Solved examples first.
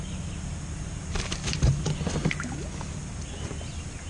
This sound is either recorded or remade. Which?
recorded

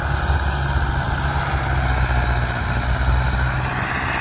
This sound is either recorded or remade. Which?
recorded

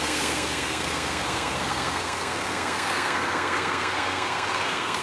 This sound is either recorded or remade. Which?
remade